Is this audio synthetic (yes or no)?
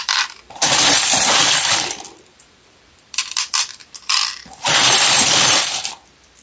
yes